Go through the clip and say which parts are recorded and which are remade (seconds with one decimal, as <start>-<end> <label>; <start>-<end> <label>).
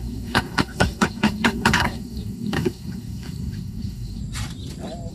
0.0-4.2 remade; 4.2-5.1 recorded